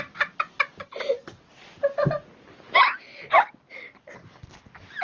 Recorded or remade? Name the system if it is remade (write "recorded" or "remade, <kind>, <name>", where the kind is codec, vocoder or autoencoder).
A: recorded